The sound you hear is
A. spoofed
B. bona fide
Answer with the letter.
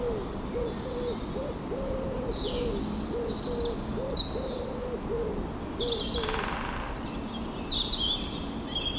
B